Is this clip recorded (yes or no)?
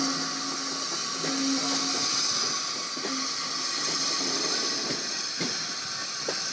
yes